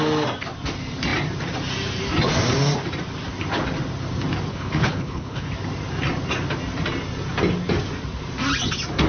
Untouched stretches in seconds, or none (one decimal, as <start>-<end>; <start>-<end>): 0.0-4.5; 5.5-9.1

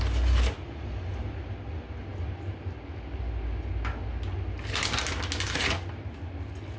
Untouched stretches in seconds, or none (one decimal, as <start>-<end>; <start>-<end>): 0.0-6.8

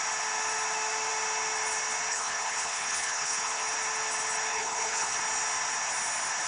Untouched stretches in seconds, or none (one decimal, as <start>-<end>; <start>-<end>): 0.0-2.1; 3.6-4.5; 5.2-6.5

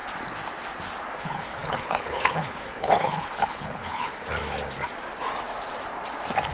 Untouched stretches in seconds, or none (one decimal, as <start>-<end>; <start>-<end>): 0.0-1.2; 4.1-6.5